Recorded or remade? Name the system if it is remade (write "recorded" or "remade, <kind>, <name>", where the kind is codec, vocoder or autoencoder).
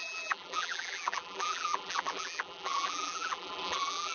remade, vocoder, BigVGAN v2